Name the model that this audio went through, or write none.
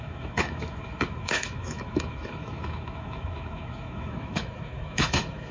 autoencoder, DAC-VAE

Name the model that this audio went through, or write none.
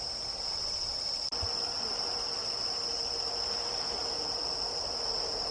none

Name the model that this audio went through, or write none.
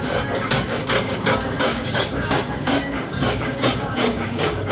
codec, DAC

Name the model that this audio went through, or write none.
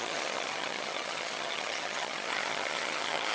vocoder, HiFi-GAN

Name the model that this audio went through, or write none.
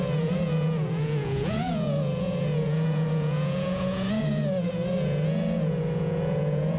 vocoder, Vocos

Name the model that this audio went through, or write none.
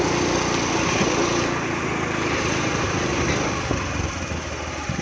none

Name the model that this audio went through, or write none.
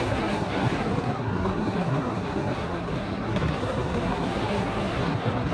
codec, SNAC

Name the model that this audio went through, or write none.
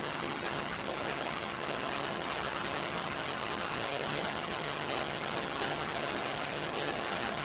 vocoder, HiFi-GAN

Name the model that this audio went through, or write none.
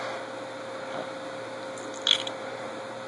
none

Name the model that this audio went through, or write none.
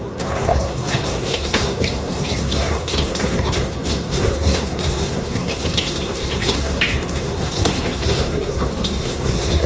codec, SNAC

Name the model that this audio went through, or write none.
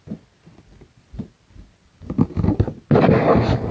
none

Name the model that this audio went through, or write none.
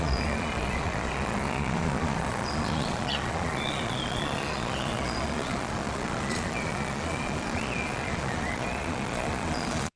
vocoder, Vocos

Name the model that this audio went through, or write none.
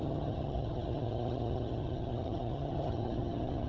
vocoder, HiFi-GAN